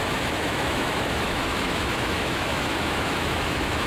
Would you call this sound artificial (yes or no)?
yes